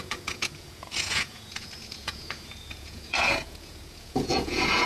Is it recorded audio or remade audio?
remade